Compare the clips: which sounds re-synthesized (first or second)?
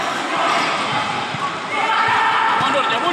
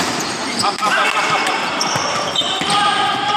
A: first